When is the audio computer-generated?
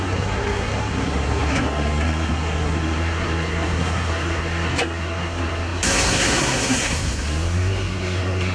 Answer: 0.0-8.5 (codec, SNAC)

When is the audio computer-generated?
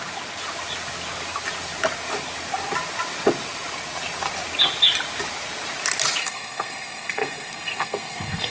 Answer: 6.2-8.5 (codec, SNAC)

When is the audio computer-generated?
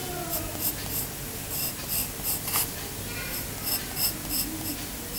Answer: none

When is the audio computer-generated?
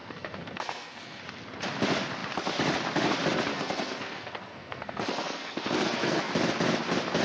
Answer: 0.0-1.2 (codec, SNAC); 3.5-6.3